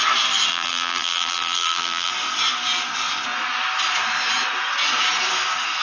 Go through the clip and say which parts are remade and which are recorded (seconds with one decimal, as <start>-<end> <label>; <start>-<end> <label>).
0.0-0.5 recorded; 0.5-2.1 remade; 2.1-5.8 recorded